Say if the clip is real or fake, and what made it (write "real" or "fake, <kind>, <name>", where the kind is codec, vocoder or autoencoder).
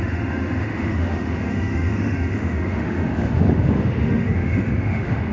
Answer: fake, autoencoder, DAC-VAE